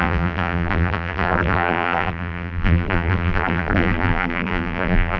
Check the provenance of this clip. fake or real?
fake